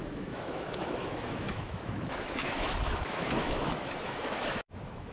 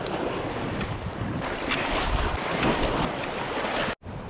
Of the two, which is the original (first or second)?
second